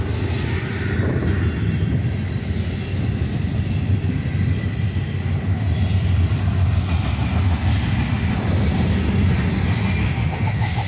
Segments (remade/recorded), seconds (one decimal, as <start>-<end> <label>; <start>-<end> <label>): 0.0-10.0 recorded; 10.0-10.9 remade